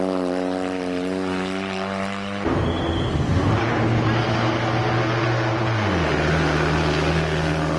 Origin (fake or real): real